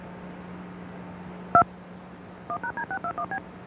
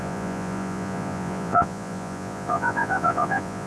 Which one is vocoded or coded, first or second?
second